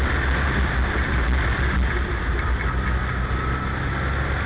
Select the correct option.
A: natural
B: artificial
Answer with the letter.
A